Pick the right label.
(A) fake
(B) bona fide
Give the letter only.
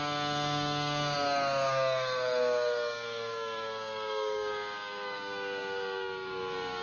A